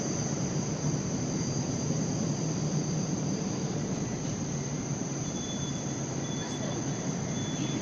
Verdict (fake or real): fake